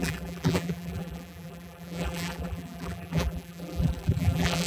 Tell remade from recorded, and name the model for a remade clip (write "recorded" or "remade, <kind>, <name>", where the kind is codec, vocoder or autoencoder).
remade, vocoder, BigVGAN v2